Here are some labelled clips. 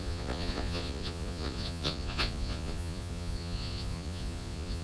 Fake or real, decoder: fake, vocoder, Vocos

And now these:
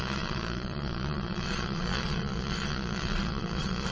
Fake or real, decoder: fake, vocoder, Vocos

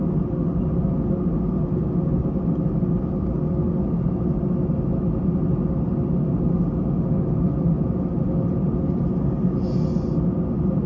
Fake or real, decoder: real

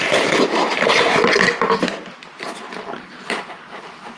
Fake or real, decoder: real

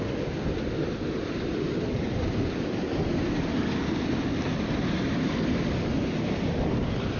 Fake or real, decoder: real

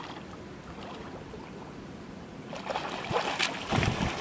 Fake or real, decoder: real